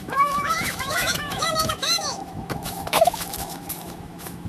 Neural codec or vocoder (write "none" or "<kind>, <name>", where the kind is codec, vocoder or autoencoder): autoencoder, DAC-VAE